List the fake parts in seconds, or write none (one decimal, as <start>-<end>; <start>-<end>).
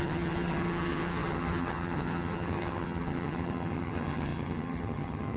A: 0.0-5.4